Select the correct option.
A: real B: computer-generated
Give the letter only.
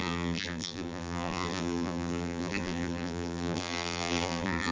B